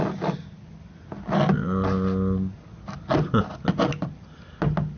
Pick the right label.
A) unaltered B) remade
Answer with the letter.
A